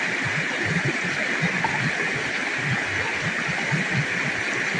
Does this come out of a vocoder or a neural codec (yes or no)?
no